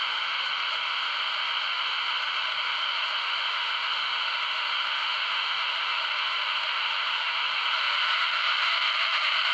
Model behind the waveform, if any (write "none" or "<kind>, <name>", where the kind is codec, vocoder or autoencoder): autoencoder, DAC-VAE